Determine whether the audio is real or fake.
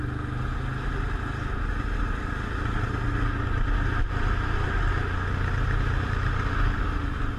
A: real